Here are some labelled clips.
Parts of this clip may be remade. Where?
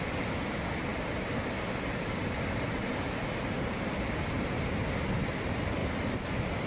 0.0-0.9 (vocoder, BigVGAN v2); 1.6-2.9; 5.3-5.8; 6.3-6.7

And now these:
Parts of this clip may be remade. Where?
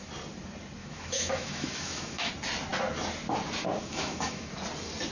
0.8-2.3 (autoencoder, DAC-VAE); 3.8-4.5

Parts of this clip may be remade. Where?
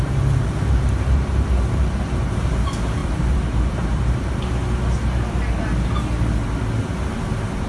0.0-4.6 (vocoder, BigVGAN v2); 6.8-7.7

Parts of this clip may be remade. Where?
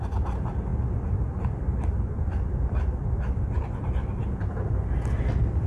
none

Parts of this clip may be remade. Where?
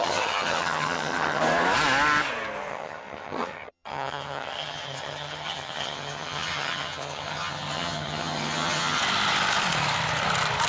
0.0-1.4 (vocoder, HiFi-GAN); 2.7-9.0